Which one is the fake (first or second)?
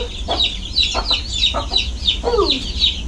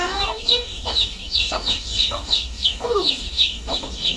second